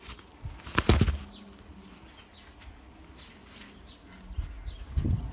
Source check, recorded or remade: recorded